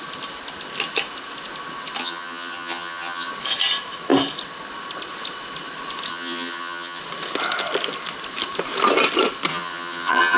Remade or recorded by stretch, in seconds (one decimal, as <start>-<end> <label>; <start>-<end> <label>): 0.0-2.0 recorded; 2.0-3.3 remade; 3.3-6.1 recorded; 6.1-7.0 remade; 7.0-9.5 recorded; 9.5-10.4 remade